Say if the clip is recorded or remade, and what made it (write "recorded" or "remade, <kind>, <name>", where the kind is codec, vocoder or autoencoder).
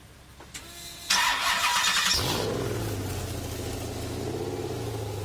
recorded